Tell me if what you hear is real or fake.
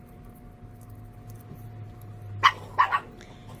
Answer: real